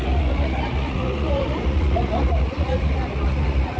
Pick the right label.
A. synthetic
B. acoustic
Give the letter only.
A